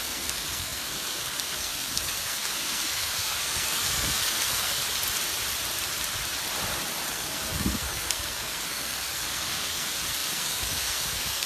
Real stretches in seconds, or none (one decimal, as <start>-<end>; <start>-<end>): 4.8-7.1

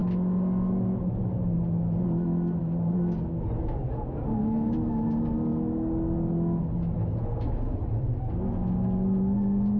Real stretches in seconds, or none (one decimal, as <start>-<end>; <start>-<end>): 0.0-9.8

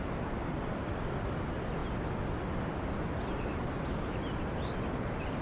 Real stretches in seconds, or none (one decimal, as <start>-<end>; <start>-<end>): 0.0-5.4

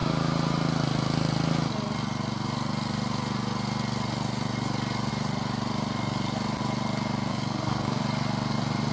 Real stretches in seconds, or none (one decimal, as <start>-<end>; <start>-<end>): 0.0-7.3; 8.0-8.9

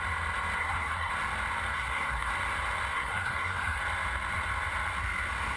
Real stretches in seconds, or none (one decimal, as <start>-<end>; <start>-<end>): 0.0-0.6; 1.1-1.7; 2.3-2.9; 3.8-5.6

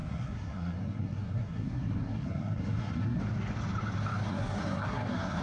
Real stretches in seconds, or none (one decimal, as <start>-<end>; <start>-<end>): 3.2-4.3

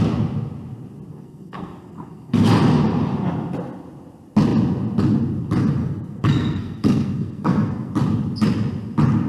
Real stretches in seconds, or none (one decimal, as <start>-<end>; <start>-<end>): 0.0-1.1; 2.6-5.8; 7.9-9.3